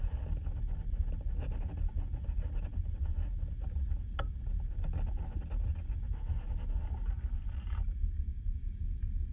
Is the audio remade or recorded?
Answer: recorded